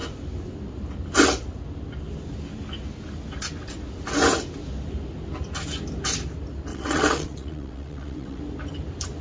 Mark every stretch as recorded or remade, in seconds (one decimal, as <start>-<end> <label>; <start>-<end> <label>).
0.0-6.7 recorded; 6.7-8.4 remade; 8.4-9.2 recorded